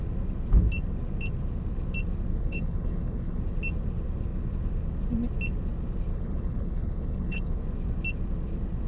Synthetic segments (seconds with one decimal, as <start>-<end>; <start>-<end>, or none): 2.3-3.4; 6.1-7.6